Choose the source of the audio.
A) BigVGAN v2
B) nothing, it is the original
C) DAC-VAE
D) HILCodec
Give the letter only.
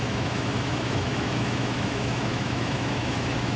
C